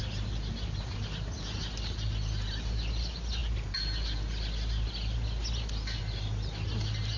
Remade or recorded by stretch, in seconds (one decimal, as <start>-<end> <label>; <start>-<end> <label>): 0.0-7.2 recorded